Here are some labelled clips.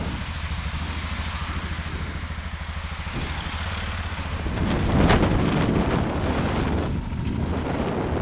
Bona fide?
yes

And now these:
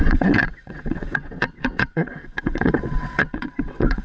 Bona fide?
no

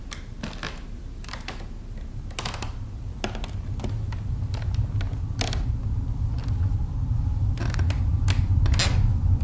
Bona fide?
yes